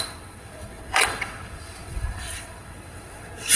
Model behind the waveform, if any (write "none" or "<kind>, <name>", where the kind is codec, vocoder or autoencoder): vocoder, WaveNeXt